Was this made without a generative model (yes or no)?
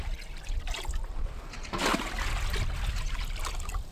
yes